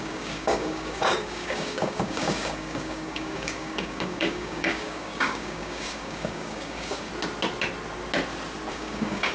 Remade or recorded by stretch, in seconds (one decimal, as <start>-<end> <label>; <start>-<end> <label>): 0.0-7.1 remade; 7.1-8.7 recorded; 8.7-9.3 remade